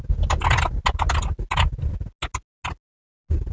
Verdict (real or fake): real